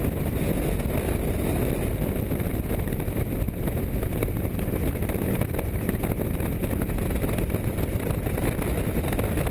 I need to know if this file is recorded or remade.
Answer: recorded